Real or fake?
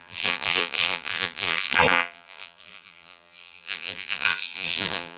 fake